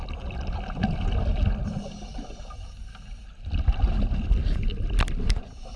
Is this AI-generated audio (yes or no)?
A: no